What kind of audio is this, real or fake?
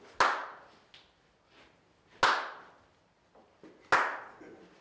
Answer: real